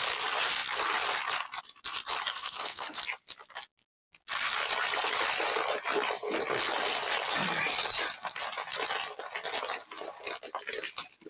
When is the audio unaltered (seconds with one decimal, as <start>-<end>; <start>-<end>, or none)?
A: 0.0-2.3; 3.0-11.3